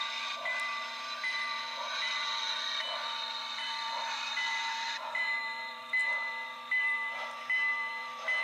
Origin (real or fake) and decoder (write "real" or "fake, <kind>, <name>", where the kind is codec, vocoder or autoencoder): fake, vocoder, BigVGAN v2